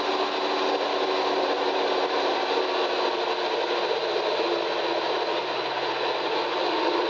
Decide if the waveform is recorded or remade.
recorded